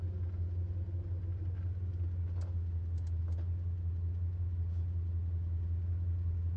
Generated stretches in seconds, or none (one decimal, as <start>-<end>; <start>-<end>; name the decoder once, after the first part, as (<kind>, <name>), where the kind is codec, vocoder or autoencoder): none